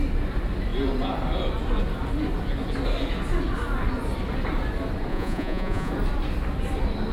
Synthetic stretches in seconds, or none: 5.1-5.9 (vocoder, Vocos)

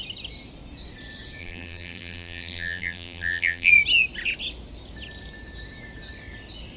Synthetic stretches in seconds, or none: 1.4-3.7 (vocoder, BigVGAN v2)